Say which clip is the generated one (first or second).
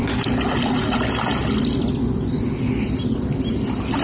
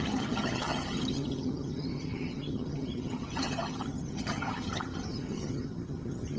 second